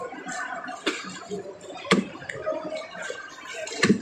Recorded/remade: remade